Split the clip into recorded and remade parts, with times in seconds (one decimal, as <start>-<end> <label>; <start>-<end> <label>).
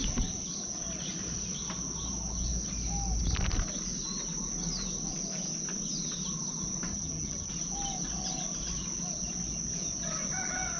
0.0-6.9 recorded; 6.9-7.5 remade; 7.5-10.8 recorded